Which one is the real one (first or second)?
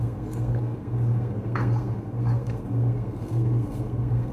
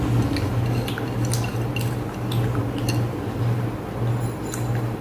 second